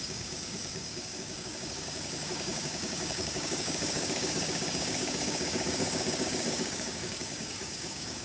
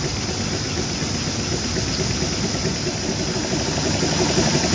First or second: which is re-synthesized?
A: first